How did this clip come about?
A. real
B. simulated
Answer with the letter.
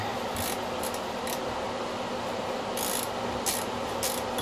A